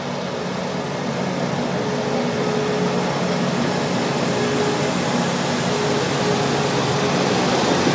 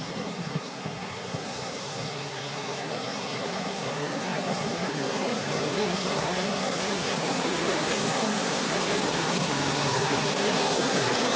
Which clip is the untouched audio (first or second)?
first